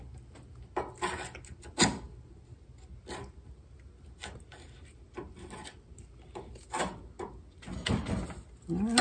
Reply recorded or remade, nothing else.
recorded